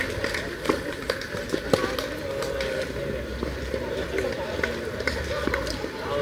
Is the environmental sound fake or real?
real